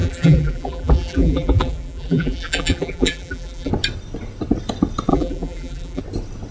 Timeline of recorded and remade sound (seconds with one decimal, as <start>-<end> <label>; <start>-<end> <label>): 0.0-3.7 remade; 3.7-5.1 recorded; 5.1-6.0 remade; 6.0-6.5 recorded